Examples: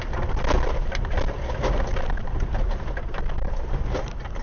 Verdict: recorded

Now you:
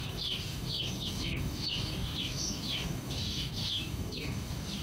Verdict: remade